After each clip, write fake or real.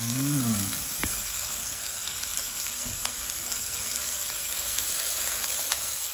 fake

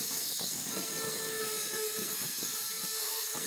fake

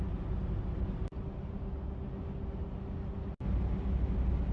real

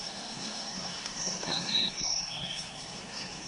fake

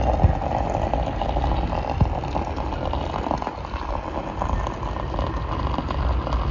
real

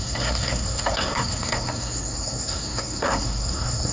fake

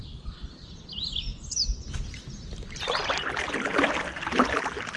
real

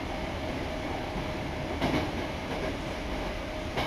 real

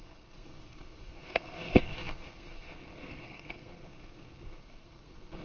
fake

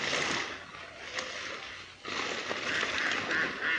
real